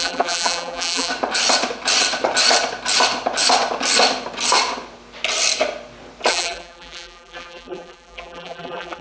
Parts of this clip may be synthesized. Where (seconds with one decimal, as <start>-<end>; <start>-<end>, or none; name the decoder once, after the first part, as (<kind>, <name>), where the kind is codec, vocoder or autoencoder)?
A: 0.0-1.1 (vocoder, BigVGAN v2); 6.3-9.0